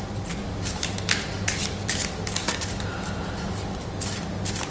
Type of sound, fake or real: real